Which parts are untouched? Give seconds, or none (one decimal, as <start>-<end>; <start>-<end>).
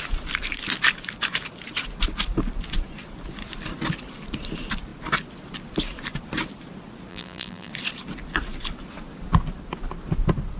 0.0-7.1; 7.7-10.6